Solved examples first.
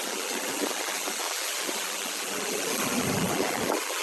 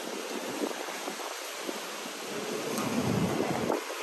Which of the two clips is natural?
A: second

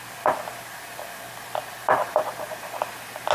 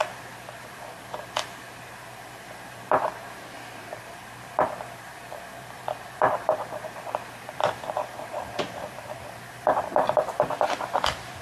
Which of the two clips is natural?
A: first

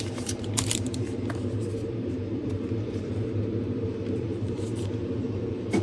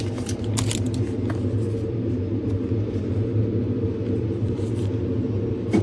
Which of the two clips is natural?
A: second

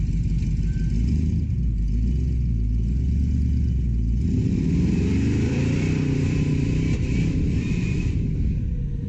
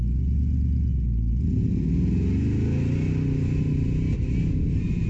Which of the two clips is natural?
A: second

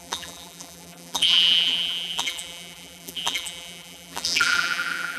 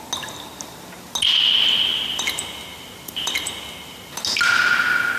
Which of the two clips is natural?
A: second